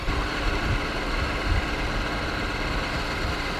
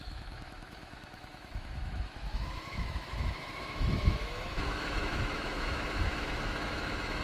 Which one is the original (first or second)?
first